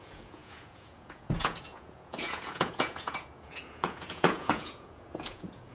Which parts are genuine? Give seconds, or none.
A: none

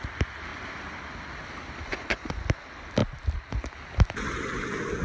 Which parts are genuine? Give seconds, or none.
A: 0.0-1.9; 2.4-5.0

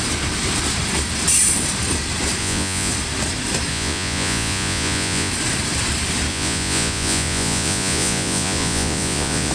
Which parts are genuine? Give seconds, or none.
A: 0.0-2.4; 2.9-3.7; 5.3-6.3

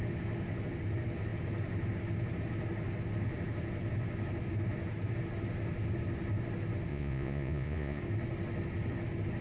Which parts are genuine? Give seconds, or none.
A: 0.0-6.9; 8.0-9.4

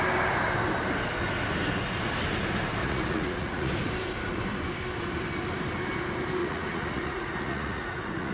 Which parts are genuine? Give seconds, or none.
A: 0.0-2.8; 3.7-6.4

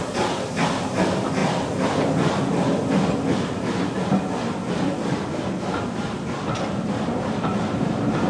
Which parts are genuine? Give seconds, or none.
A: 0.0-8.3

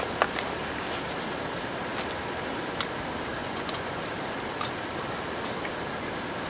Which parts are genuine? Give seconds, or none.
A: 0.0-3.4; 4.0-6.5